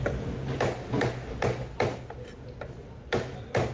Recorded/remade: recorded